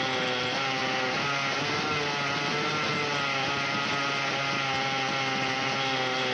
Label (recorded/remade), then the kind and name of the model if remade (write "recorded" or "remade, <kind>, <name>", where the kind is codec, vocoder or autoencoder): recorded